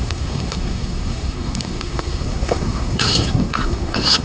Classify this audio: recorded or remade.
remade